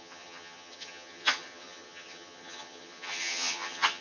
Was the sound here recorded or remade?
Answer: remade